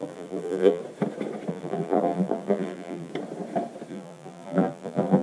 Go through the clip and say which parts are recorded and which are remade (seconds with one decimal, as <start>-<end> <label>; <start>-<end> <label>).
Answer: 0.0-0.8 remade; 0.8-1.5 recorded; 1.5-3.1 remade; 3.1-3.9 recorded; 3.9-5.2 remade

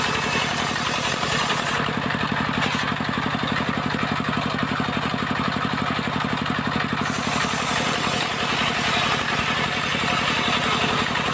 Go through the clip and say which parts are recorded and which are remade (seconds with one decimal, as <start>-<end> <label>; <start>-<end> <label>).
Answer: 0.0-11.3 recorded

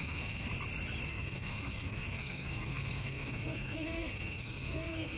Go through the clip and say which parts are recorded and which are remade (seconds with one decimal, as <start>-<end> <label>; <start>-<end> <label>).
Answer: 0.0-0.5 remade; 0.5-1.1 recorded; 1.1-5.2 remade

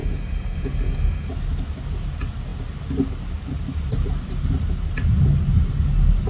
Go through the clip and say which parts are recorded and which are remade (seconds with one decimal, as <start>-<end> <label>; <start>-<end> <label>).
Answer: 0.0-1.3 remade; 1.3-6.3 recorded